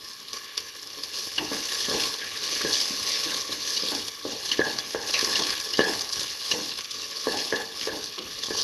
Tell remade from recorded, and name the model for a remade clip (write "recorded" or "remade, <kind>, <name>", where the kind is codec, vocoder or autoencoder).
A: remade, codec, HILCodec